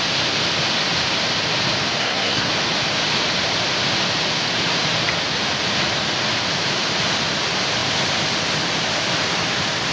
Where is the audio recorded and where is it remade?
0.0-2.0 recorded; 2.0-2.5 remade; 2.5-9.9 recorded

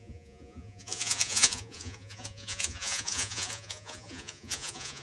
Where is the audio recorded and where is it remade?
0.0-5.0 remade

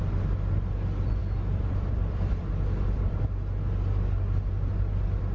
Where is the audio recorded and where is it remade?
0.0-1.2 recorded; 1.2-3.2 remade; 3.2-5.3 recorded